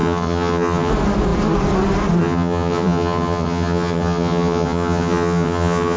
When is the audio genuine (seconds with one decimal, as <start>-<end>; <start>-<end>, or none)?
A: 0.9-2.2